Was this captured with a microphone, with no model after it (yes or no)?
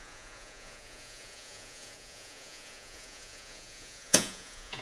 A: no